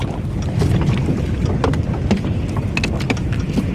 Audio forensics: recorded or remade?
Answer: recorded